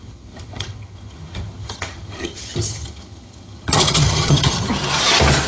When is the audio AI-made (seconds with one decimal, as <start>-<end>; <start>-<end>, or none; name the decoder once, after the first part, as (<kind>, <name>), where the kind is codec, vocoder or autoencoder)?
0.0-4.7 (vocoder, HiFi-GAN)